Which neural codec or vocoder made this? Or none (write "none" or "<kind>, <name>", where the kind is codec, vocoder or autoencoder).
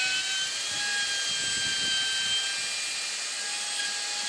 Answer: none